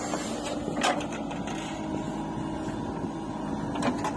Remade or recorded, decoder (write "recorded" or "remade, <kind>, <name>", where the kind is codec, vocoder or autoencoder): recorded